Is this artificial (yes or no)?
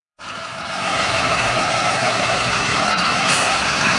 yes